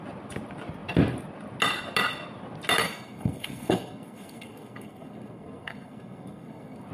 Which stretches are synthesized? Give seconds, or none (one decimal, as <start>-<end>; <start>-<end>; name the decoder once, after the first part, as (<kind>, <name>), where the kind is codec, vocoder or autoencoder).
2.8-6.9 (codec, SNAC)

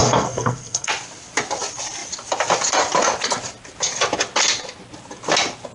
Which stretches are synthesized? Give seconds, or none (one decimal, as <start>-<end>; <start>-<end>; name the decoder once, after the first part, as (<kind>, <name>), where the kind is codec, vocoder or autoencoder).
0.0-0.9 (codec, SNAC)

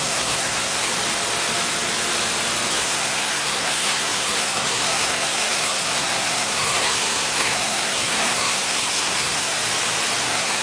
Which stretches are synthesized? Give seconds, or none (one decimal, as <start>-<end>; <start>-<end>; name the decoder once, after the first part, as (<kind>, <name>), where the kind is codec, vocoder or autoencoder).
0.0-0.9 (codec, SNAC); 2.7-9.6; 10.2-10.6